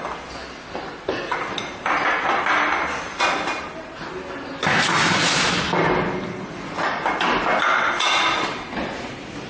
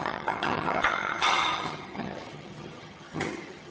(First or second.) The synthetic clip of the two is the second